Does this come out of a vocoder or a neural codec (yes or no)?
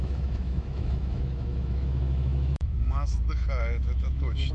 yes